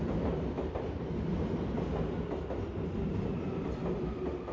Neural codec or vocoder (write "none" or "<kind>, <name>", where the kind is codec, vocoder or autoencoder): none